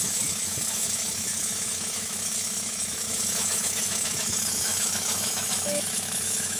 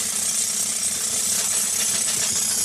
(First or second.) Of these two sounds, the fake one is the first